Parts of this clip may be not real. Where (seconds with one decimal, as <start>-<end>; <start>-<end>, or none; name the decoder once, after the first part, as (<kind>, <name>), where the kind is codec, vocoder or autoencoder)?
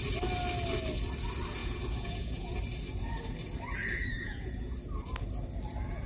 1.6-2.6 (vocoder, Vocos); 4.1-4.8